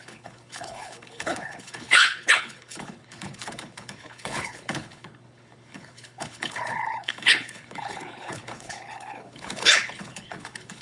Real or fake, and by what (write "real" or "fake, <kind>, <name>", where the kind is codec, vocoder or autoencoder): fake, codec, HILCodec